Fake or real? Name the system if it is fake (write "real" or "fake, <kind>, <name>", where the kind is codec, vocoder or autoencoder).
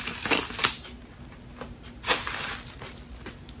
real